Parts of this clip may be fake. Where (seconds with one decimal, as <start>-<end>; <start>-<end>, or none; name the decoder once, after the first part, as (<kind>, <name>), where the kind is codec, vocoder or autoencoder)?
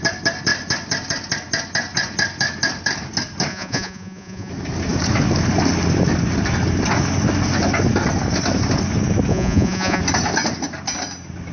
3.5-4.5 (vocoder, Vocos); 9.3-10.0